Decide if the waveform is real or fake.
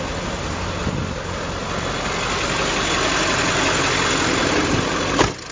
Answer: real